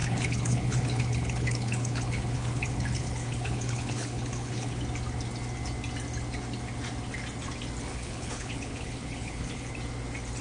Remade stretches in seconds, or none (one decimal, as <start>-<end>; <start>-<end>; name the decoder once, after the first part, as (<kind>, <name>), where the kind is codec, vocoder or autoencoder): 0.0-4.8 (codec, HILCodec); 7.9-9.7